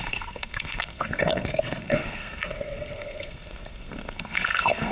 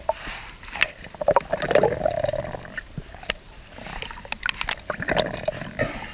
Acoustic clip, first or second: second